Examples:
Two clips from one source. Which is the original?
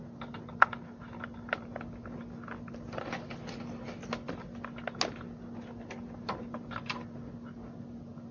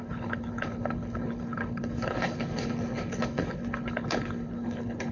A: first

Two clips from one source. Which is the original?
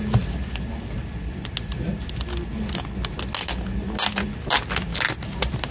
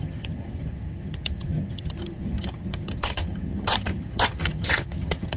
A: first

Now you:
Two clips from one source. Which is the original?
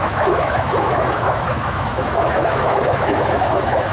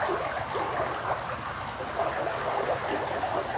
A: second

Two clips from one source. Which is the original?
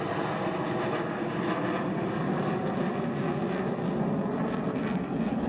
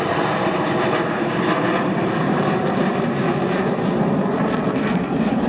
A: first